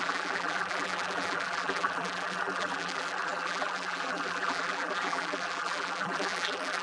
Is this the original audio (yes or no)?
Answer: no